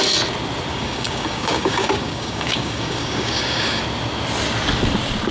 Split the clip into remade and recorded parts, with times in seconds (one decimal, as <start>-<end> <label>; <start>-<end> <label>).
0.0-0.7 recorded; 0.7-3.8 remade; 3.8-5.3 recorded